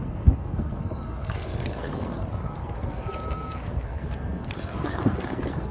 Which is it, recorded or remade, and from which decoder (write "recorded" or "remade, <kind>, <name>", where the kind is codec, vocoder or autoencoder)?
remade, codec, SNAC